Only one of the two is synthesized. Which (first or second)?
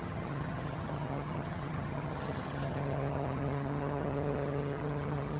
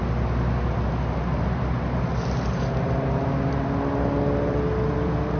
first